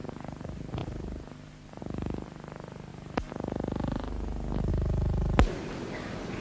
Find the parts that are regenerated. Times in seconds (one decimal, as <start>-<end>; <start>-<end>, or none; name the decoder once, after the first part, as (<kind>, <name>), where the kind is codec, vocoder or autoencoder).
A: 0.0-2.9 (vocoder, BigVGAN v2); 4.7-6.4